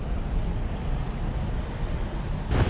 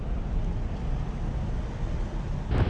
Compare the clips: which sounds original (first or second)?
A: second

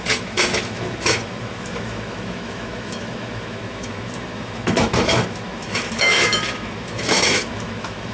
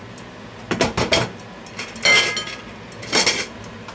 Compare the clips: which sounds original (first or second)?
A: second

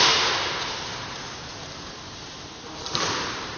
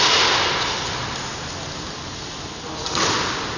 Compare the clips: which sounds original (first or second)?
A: second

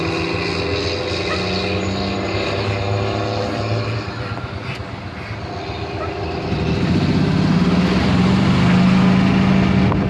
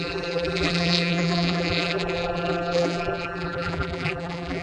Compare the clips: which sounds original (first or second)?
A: first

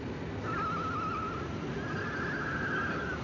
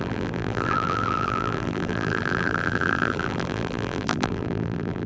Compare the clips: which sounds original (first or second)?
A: first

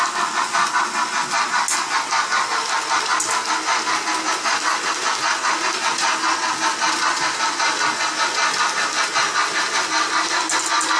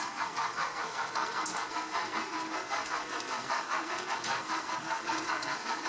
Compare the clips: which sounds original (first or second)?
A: first